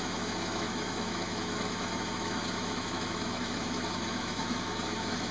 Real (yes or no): no